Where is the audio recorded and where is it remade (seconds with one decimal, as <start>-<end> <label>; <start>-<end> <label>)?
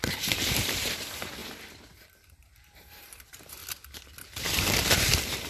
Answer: 0.0-1.4 remade; 1.4-2.3 recorded; 2.3-3.6 remade; 3.6-4.4 recorded; 4.4-5.5 remade